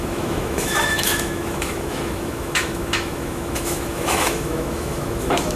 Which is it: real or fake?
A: fake